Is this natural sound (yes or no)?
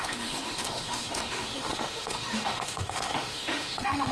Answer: no